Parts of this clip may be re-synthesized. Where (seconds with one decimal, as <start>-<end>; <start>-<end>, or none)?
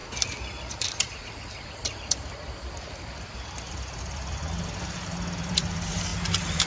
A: 0.0-6.1